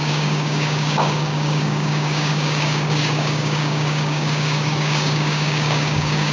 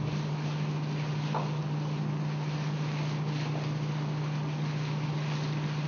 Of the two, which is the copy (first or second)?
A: first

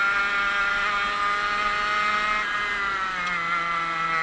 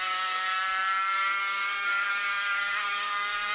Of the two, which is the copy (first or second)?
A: second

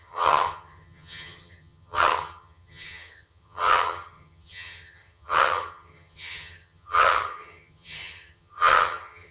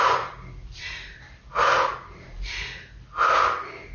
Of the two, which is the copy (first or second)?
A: first